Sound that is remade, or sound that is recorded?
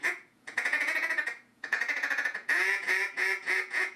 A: remade